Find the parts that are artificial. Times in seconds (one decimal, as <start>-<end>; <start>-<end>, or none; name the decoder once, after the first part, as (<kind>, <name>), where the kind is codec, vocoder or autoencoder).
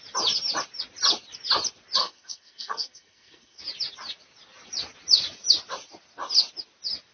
2.0-3.6 (codec, SNAC)